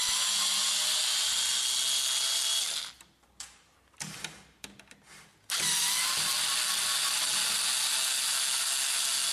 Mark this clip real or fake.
real